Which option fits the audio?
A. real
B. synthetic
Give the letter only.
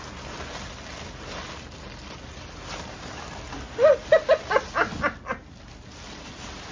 A